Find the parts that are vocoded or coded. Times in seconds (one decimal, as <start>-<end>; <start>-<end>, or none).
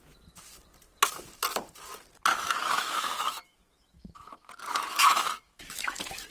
2.3-4.5; 4.9-6.3